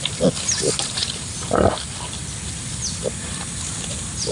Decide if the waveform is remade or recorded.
recorded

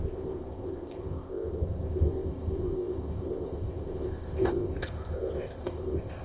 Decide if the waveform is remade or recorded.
remade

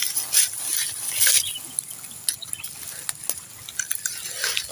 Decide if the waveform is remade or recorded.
recorded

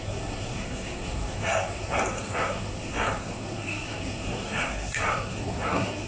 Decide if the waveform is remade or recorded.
remade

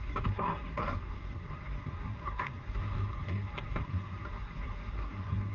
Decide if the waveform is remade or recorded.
remade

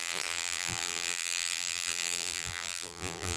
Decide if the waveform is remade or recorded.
remade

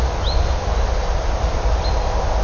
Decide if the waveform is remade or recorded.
recorded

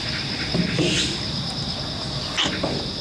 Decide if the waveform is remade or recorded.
recorded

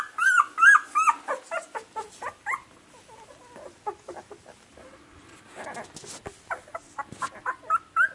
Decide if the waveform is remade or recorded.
recorded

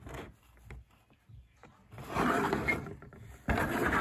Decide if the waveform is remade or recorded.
recorded